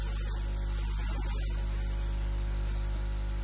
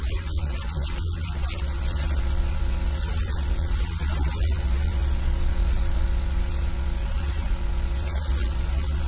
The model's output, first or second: second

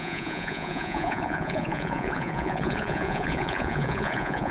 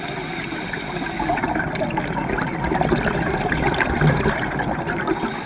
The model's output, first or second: first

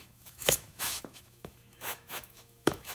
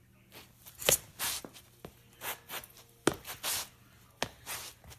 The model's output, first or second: first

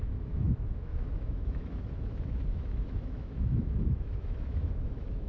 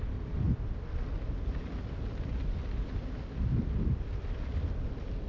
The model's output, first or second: first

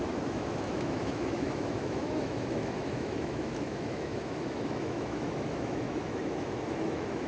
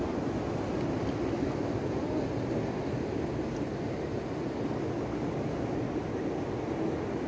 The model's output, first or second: first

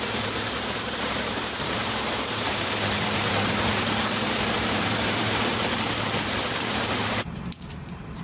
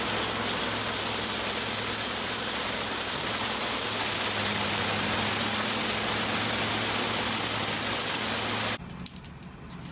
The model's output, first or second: first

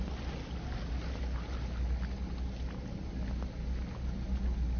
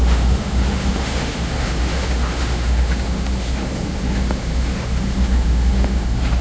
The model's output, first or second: second